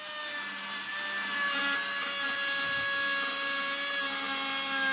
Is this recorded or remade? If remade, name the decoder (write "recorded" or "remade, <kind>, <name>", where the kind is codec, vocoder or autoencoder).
recorded